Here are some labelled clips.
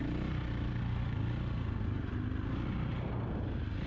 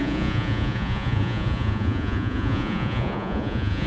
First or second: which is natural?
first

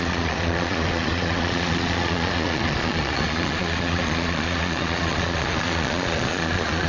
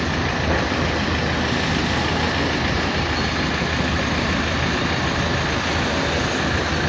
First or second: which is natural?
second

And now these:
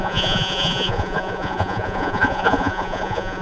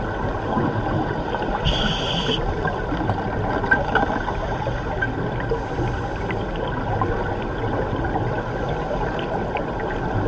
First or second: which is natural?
second